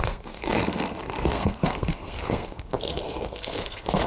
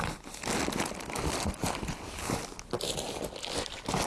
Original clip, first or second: second